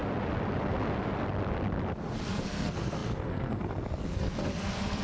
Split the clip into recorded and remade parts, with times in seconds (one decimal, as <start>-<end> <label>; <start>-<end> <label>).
0.0-2.3 recorded; 2.3-5.0 remade